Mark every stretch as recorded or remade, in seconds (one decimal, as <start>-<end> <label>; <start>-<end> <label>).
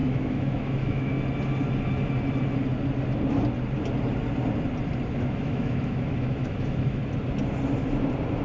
0.0-1.1 remade; 1.1-5.1 recorded; 5.1-7.0 remade; 7.0-8.4 recorded